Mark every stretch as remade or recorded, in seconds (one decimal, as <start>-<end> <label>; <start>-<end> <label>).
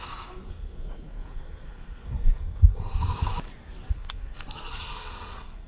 0.0-3.3 remade; 3.3-3.9 recorded; 3.9-5.7 remade